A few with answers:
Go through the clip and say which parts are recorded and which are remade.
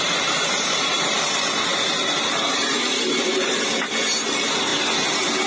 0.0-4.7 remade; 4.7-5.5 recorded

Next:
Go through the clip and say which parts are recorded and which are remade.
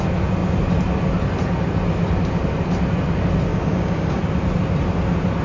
0.0-3.5 recorded; 3.5-4.2 remade; 4.2-5.4 recorded